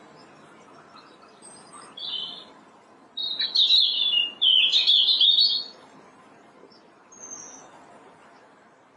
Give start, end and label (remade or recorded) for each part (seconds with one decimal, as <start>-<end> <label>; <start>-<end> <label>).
0.0-9.0 recorded